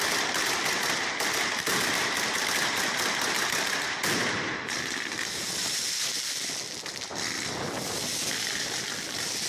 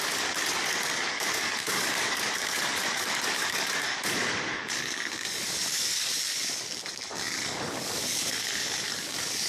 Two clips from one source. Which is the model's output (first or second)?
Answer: second